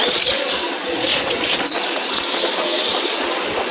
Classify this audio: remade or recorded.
remade